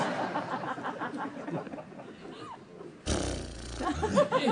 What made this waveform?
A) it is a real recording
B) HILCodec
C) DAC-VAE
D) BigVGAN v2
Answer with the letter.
A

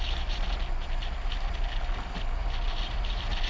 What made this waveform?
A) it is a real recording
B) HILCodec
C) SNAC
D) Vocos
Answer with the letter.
A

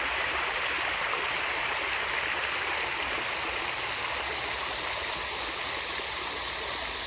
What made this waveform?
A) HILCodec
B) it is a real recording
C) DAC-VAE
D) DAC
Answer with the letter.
B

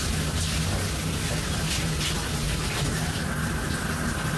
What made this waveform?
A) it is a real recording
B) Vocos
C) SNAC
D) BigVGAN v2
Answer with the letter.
A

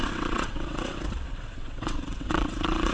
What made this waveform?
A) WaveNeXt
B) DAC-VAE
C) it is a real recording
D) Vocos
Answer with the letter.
A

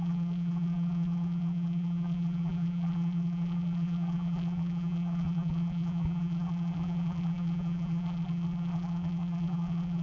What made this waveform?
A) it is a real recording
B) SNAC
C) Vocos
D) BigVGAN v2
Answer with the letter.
D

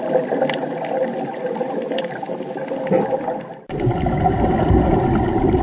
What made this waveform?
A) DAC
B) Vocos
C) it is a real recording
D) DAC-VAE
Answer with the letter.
C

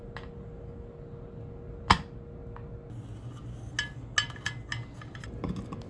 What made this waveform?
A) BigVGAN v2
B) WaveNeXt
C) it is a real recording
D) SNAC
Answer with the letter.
C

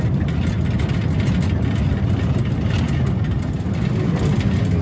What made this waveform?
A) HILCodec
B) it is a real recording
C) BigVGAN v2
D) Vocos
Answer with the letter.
B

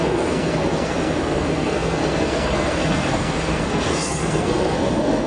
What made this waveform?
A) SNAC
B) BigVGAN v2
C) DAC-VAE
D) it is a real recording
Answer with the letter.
A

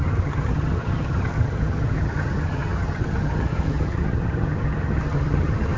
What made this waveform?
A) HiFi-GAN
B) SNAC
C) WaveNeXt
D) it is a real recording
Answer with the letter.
A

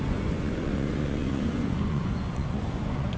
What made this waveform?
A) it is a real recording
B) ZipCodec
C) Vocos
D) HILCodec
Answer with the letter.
C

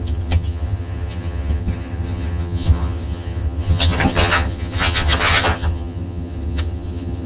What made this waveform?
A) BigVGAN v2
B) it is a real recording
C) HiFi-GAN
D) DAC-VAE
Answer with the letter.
C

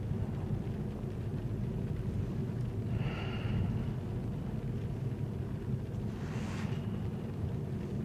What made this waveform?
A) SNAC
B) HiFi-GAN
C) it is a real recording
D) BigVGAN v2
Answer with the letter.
C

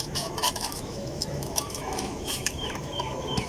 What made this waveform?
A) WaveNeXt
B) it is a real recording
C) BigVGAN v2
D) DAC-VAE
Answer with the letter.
D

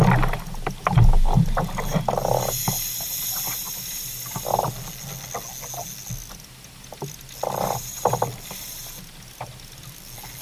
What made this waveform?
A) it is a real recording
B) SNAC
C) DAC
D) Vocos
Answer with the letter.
A